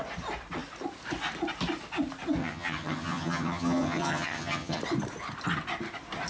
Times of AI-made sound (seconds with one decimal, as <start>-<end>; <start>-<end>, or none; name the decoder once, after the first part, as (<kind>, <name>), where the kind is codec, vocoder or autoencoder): 2.4-4.8 (vocoder, HiFi-GAN)